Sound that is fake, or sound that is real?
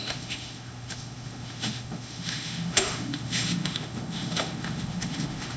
fake